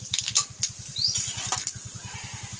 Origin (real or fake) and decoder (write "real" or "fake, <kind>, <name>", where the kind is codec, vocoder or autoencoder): fake, vocoder, BigVGAN v2